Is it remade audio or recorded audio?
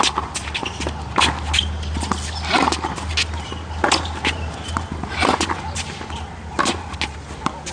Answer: recorded